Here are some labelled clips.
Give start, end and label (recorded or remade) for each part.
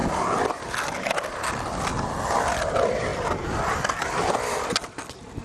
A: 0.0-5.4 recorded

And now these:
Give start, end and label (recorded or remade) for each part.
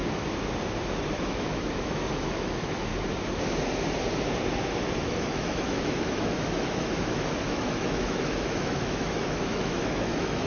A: 0.0-1.2 recorded; 1.2-2.9 remade; 2.9-5.0 recorded; 5.0-10.5 remade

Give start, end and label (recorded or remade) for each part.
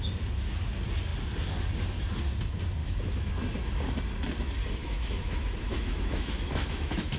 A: 0.0-2.8 recorded; 2.8-3.3 remade; 3.3-4.8 recorded; 4.8-7.2 remade